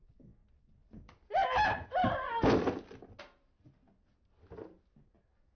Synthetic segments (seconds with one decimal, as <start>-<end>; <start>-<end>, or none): none

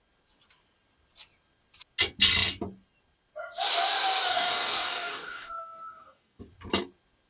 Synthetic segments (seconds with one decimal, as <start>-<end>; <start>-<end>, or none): 4.3-6.4

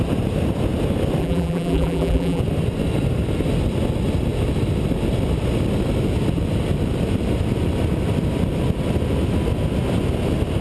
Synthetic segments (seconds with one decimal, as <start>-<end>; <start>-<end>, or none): 1.2-2.4

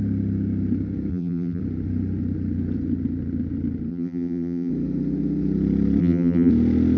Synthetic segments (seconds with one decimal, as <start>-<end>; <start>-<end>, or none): 1.1-1.6; 3.9-4.7; 6.0-6.5

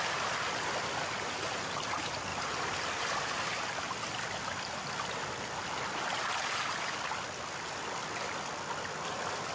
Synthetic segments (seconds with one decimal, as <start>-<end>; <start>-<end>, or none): 2.3-3.8

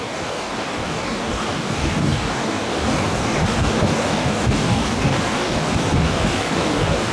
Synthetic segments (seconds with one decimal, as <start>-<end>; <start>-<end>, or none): 0.0-7.1

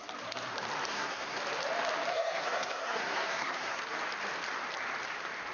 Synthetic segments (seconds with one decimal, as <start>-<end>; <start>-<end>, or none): 0.9-1.4; 2.1-3.8

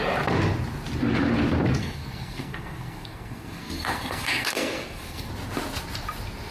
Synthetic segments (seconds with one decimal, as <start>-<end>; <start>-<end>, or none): 1.8-5.3